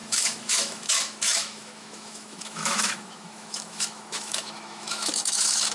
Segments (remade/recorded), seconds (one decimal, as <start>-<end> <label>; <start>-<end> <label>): 0.0-5.7 remade